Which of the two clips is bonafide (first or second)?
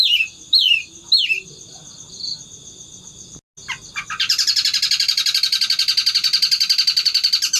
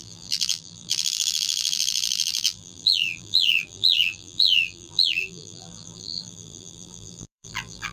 first